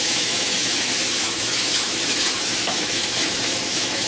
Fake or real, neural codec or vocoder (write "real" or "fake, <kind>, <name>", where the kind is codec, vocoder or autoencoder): fake, autoencoder, DAC-VAE